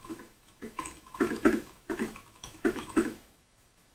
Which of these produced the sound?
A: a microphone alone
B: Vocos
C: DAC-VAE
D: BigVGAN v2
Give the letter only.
C